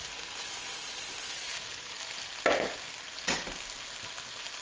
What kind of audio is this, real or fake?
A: real